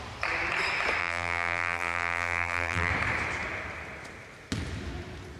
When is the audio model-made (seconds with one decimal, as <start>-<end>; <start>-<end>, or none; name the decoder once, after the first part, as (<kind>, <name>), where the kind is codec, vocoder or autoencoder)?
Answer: 1.0-2.9 (vocoder, BigVGAN v2)